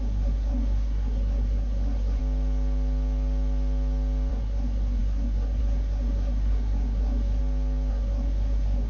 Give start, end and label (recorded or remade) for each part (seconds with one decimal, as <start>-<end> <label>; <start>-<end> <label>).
0.0-2.2 remade; 2.2-4.3 recorded; 4.3-7.4 remade; 7.4-7.9 recorded; 7.9-8.9 remade